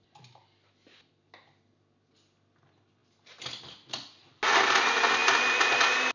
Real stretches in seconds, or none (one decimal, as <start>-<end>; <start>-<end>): 0.0-6.1